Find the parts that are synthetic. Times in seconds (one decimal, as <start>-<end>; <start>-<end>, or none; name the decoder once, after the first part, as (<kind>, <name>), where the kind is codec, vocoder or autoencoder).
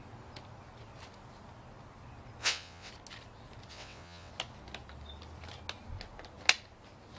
2.4-2.9 (vocoder, WaveNeXt); 3.7-4.3